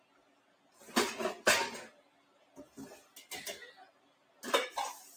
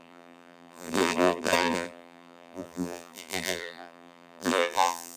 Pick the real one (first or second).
first